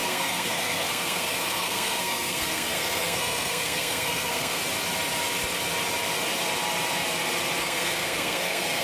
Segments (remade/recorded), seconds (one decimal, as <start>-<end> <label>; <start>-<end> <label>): 0.0-4.6 remade; 4.6-7.6 recorded; 7.6-8.8 remade